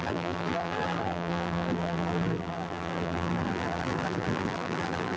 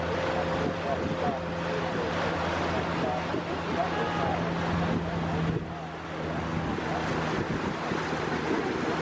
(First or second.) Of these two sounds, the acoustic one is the second